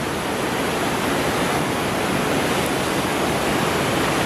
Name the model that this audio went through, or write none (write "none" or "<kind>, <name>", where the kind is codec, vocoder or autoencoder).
none